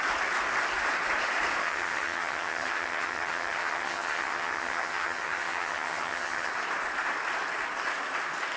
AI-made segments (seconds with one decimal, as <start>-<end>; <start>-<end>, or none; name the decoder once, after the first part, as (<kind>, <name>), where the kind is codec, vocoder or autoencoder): 1.6-6.5 (vocoder, HiFi-GAN)